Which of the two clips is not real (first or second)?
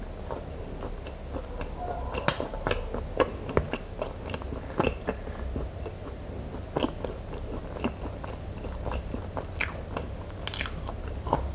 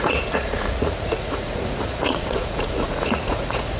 second